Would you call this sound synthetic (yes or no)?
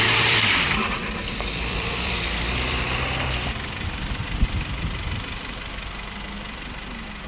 yes